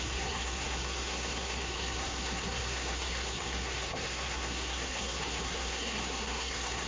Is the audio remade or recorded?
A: remade